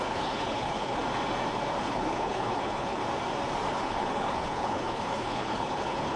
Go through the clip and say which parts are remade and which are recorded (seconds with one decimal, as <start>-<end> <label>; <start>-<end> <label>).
0.0-1.0 remade; 1.0-1.8 recorded; 1.8-3.0 remade; 3.0-3.7 recorded; 3.7-6.2 remade